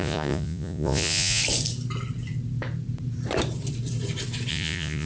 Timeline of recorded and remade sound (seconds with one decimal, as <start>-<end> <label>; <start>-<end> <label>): 0.0-1.4 remade; 1.4-4.5 recorded; 4.5-5.1 remade